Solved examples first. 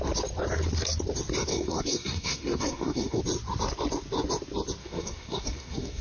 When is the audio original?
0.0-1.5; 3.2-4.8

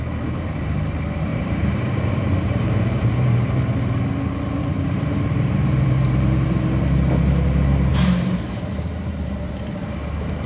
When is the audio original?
0.0-1.3; 3.7-4.6; 7.1-7.9; 9.3-10.5

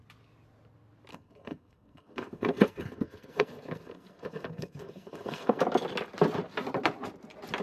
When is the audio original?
0.0-1.1; 5.6-7.6

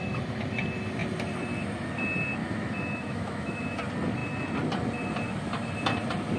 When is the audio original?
0.0-2.4; 3.8-6.4